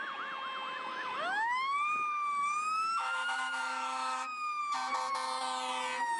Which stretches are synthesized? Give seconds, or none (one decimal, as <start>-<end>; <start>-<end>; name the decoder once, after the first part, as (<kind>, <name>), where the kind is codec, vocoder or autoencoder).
0.9-4.6 (autoencoder, DAC-VAE)